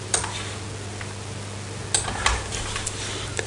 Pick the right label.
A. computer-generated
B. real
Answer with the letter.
B